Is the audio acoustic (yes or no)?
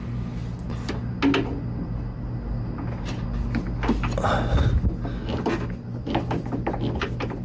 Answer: yes